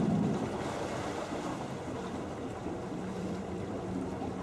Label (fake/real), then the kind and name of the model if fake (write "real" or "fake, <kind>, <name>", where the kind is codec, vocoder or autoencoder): fake, vocoder, BigVGAN v2